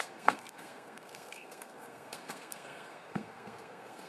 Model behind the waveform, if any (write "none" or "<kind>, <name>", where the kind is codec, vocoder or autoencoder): codec, SNAC